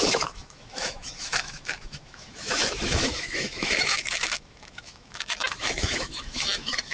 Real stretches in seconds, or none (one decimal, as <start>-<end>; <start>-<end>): none